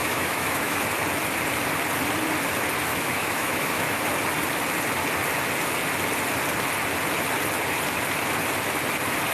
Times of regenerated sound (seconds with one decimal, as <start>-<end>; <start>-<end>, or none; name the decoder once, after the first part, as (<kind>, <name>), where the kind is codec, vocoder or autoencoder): 0.0-0.8 (autoencoder, DAC-VAE); 2.9-4.0